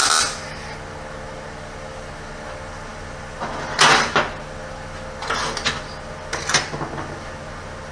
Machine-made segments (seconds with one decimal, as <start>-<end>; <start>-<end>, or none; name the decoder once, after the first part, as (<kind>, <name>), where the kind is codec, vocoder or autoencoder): none